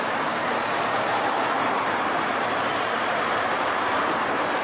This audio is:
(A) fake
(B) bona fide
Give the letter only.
B